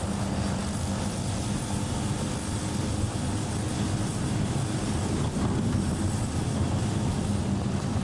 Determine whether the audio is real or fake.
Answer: real